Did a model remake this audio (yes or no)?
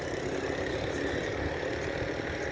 no